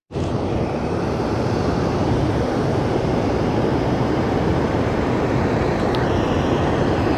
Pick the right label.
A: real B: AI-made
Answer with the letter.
B